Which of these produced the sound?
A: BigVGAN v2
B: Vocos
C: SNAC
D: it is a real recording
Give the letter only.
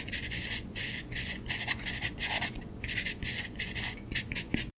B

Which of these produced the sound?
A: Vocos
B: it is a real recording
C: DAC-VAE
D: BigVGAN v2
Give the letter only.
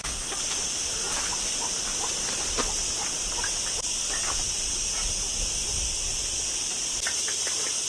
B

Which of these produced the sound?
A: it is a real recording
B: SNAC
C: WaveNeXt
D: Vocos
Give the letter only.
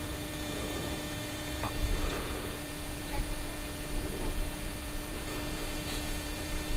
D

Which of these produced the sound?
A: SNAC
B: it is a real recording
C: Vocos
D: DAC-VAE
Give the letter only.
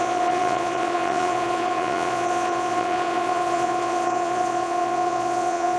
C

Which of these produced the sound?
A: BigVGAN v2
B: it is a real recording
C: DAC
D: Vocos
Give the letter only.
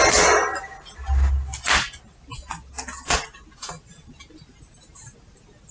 B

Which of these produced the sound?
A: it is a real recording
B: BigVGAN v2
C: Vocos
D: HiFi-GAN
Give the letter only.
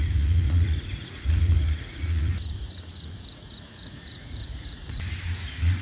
C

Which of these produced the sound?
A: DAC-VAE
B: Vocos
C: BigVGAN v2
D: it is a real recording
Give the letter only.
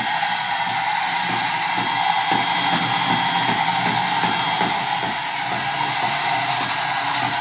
D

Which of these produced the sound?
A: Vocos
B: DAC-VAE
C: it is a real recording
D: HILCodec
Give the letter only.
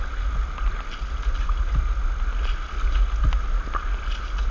C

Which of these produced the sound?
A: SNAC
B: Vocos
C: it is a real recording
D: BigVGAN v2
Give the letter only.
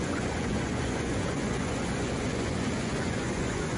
B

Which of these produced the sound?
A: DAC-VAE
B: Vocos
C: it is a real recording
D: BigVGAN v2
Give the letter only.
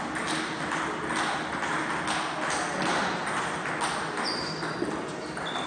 C